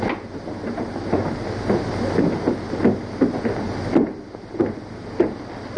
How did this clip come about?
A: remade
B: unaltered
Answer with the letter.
B